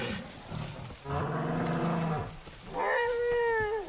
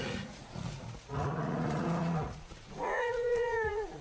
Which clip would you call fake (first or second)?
second